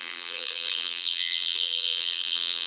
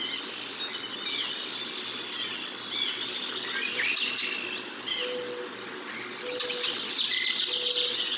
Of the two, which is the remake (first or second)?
first